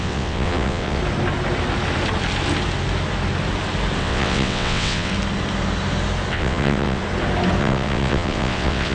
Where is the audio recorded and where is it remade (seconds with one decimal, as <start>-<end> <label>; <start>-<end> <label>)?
0.0-1.0 remade; 1.0-4.0 recorded; 4.0-5.1 remade; 5.1-6.3 recorded; 6.3-7.0 remade; 7.0-7.6 recorded; 7.6-8.9 remade